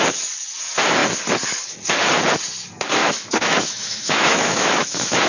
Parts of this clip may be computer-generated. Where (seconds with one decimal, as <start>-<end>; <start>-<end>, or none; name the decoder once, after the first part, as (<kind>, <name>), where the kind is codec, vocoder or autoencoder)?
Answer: 3.0-5.3 (autoencoder, DAC-VAE)